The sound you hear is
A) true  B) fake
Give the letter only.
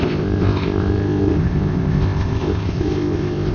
B